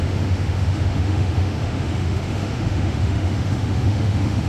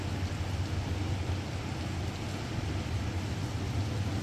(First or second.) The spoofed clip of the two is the first